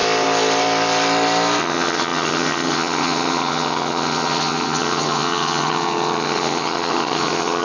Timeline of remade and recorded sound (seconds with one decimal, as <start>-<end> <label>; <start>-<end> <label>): 0.0-1.6 recorded; 1.6-7.6 remade

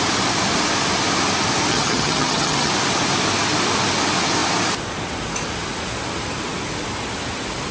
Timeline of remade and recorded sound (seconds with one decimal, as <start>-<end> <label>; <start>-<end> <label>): 0.0-1.7 recorded; 1.7-2.7 remade; 2.7-7.7 recorded

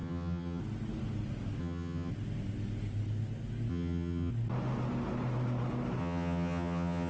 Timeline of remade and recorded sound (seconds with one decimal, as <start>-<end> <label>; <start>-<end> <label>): 0.0-0.6 remade; 0.6-1.6 recorded; 1.6-2.1 remade; 2.1-3.7 recorded; 3.7-4.3 remade; 4.3-6.0 recorded; 6.0-7.1 remade

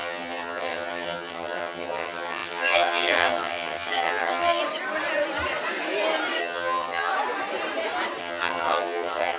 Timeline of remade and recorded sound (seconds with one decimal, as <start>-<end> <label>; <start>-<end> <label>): 0.0-4.6 remade; 4.6-6.4 recorded; 6.4-7.1 remade; 7.1-8.2 recorded; 8.2-9.4 remade

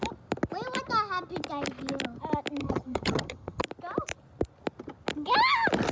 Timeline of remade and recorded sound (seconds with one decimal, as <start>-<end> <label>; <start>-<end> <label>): 0.0-2.6 recorded; 2.6-3.6 remade; 3.6-5.9 recorded

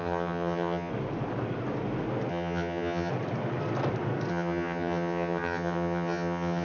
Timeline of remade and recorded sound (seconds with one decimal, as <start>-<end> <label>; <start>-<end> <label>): 0.0-0.9 remade; 0.9-2.3 recorded; 2.3-3.1 remade; 3.1-4.3 recorded; 4.3-6.6 remade

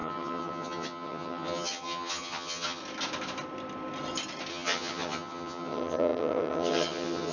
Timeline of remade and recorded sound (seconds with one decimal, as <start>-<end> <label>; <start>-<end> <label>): 0.0-2.8 remade; 2.8-4.5 recorded; 4.5-7.3 remade